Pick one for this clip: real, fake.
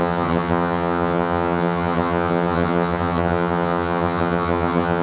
fake